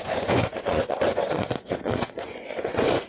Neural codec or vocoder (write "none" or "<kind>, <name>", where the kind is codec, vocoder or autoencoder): vocoder, Vocos